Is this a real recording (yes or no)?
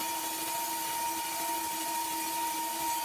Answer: yes